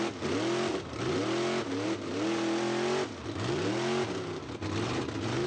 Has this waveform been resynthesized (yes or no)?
no